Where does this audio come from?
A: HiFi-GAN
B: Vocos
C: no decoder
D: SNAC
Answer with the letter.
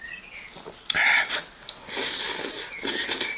C